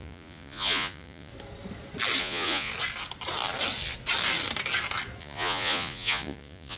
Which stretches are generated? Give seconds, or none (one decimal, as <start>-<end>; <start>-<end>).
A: 0.0-1.3; 2.2-2.7; 5.2-6.8